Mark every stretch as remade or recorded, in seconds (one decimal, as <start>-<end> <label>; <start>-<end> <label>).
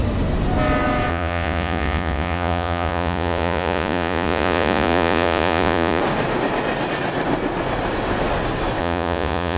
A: 0.0-1.1 recorded; 1.1-6.0 remade; 6.0-8.8 recorded; 8.8-9.6 remade